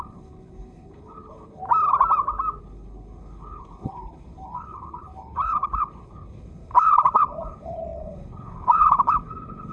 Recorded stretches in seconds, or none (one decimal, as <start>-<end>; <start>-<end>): 1.6-2.6